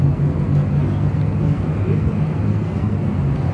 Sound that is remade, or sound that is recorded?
remade